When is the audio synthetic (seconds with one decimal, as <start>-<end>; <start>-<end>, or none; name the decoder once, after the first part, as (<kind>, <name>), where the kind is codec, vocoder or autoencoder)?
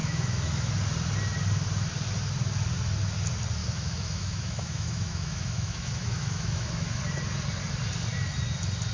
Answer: 0.0-0.7 (autoencoder, DAC-VAE); 3.6-7.0